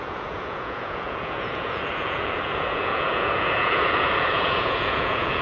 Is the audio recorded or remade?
remade